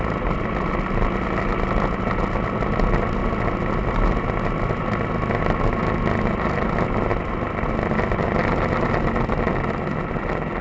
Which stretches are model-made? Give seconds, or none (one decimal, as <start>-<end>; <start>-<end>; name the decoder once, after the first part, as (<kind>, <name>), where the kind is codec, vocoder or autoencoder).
none